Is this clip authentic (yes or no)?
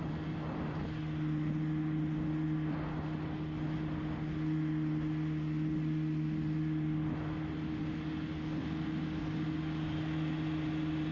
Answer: yes